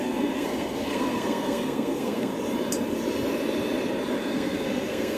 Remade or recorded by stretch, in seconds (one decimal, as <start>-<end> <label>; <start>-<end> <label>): 0.0-2.3 remade; 2.3-4.2 recorded; 4.2-5.2 remade